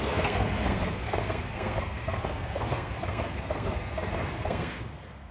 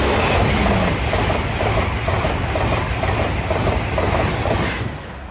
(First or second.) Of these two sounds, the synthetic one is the first